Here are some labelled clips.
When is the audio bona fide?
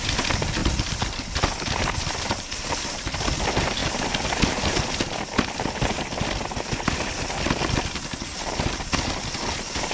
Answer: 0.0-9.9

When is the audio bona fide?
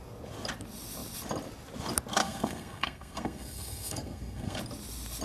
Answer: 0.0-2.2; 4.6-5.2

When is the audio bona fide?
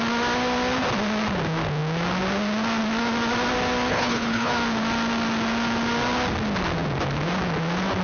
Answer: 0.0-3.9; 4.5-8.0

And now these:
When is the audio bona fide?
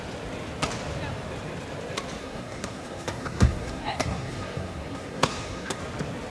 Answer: 0.0-2.2; 5.8-6.3